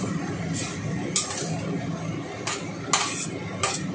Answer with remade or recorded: recorded